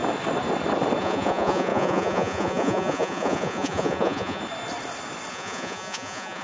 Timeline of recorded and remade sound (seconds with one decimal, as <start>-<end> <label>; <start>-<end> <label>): 0.0-1.0 recorded; 1.0-4.4 remade; 4.4-5.3 recorded; 5.3-6.4 remade